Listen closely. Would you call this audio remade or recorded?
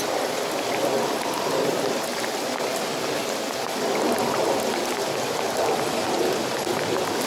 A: remade